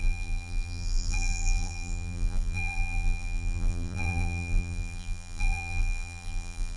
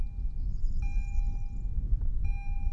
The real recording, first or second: second